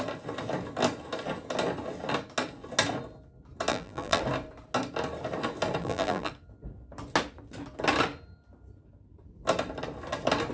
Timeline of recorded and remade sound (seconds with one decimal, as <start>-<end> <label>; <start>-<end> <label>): 0.0-3.7 recorded; 3.7-4.2 remade; 4.2-5.8 recorded; 5.8-6.3 remade; 6.3-10.5 recorded